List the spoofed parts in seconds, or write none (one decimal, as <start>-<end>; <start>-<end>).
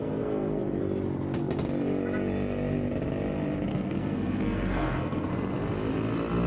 0.0-0.8; 3.7-5.3